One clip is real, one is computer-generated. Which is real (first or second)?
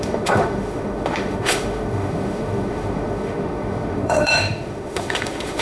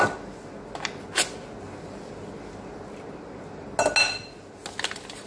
second